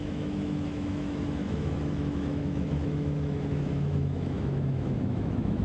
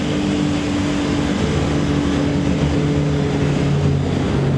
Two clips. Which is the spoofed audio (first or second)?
first